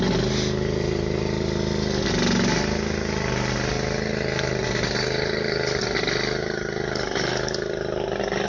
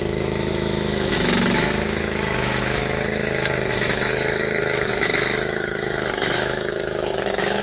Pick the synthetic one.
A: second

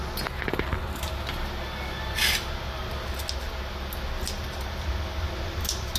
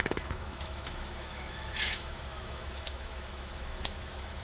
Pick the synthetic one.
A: second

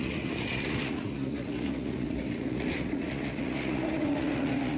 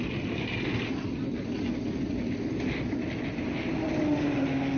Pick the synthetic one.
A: first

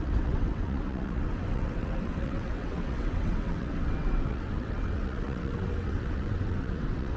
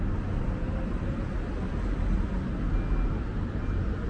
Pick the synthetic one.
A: first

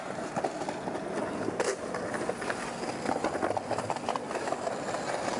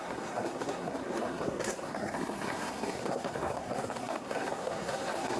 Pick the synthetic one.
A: second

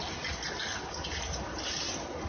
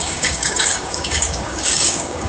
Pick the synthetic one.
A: second